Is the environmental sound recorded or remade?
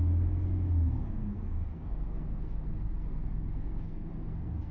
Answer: remade